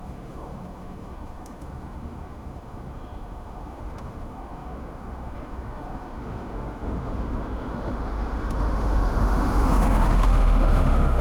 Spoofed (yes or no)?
yes